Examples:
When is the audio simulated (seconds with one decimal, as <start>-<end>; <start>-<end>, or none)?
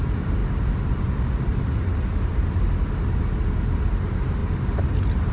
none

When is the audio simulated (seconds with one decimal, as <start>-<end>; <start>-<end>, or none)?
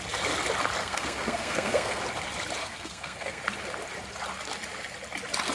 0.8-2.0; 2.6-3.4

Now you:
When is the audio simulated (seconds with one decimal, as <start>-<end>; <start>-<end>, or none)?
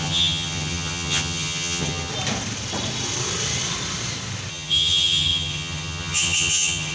0.0-2.1; 4.5-6.9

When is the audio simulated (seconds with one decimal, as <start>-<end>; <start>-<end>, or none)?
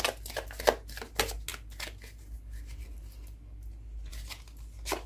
none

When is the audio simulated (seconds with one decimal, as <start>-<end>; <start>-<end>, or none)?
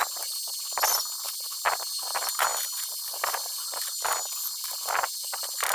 none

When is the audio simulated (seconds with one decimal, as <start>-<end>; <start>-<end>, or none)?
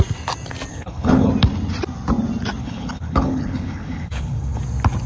0.7-1.3; 2.6-4.6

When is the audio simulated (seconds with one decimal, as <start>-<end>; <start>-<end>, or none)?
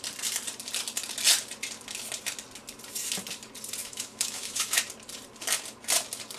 3.8-4.8